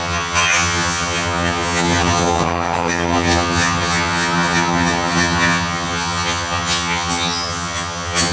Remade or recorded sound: remade